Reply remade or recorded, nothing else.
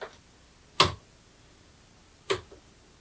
recorded